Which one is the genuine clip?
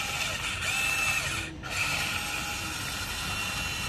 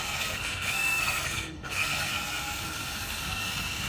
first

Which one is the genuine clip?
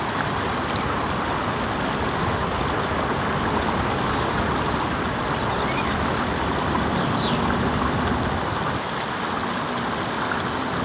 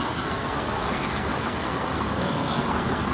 first